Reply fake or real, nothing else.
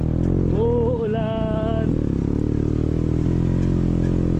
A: real